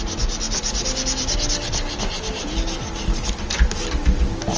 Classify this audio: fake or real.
real